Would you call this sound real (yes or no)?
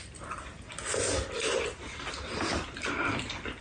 yes